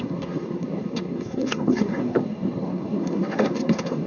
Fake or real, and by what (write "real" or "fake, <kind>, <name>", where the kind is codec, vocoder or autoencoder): fake, codec, SNAC